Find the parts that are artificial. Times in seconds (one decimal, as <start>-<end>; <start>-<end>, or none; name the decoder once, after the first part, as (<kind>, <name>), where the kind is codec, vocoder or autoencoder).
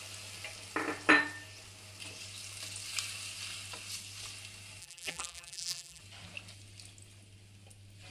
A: 4.8-6.0 (vocoder, BigVGAN v2)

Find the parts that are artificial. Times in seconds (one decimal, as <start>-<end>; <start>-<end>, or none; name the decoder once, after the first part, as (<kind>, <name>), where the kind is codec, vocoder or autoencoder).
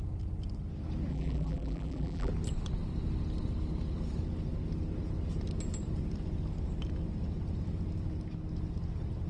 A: 1.1-2.3 (vocoder, BigVGAN v2)